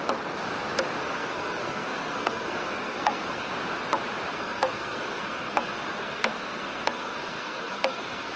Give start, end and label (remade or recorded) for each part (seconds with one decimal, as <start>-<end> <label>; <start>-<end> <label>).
0.0-1.0 recorded; 1.0-3.5 remade; 3.5-4.3 recorded; 4.3-8.4 remade